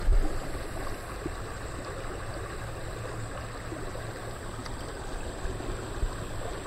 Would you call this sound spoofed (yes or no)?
no